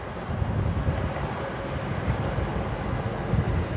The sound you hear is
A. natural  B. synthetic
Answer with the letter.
A